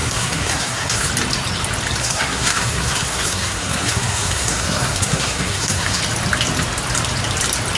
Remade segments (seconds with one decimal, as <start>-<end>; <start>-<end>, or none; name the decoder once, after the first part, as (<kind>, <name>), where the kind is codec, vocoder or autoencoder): 0.0-1.1 (codec, SNAC); 2.0-6.0